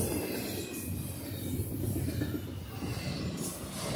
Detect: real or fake real